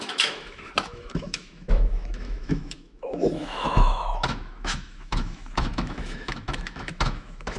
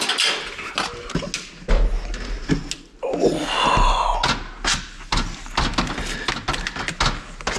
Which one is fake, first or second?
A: first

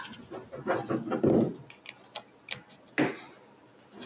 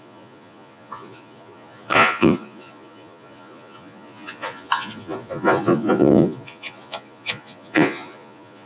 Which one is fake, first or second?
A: second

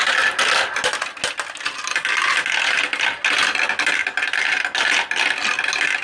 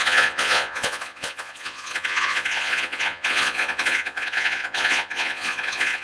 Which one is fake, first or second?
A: second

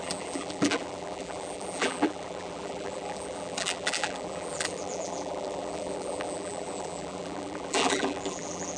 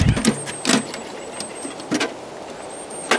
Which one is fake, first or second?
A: first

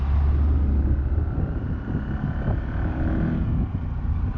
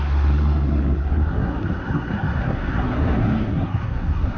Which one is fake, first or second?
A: second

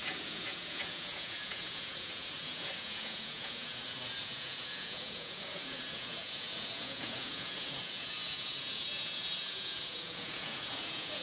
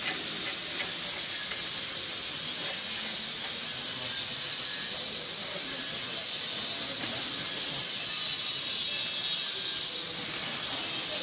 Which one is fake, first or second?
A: first